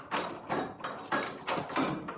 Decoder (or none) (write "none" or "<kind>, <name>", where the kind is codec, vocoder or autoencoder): none